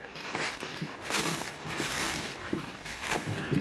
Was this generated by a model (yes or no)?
yes